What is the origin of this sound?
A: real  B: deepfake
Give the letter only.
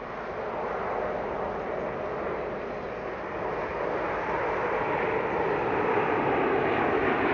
A